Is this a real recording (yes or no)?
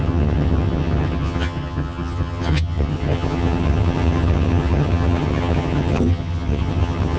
no